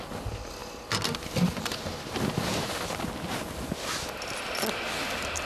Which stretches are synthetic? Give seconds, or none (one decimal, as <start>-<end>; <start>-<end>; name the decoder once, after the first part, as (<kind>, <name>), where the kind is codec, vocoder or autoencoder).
none